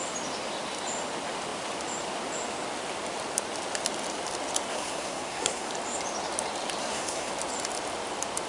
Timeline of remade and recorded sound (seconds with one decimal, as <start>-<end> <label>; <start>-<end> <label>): 0.0-4.7 recorded; 4.7-5.7 remade; 5.7-6.8 recorded; 6.8-7.3 remade; 7.3-8.5 recorded